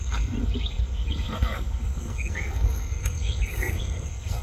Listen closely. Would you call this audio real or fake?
fake